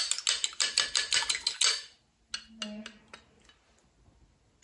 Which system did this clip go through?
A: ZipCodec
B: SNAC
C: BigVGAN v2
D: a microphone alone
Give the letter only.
D